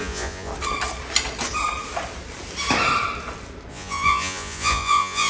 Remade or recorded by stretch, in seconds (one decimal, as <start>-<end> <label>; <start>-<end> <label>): 0.0-0.5 remade; 0.5-3.7 recorded; 3.7-5.3 remade